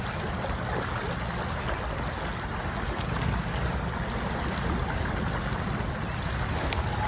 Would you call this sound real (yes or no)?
yes